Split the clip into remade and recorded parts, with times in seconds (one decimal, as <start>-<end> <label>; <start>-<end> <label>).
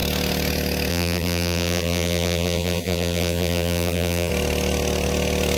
0.0-0.9 recorded; 0.9-4.3 remade; 4.3-5.6 recorded